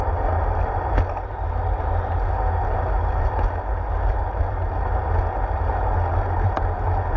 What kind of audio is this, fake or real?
real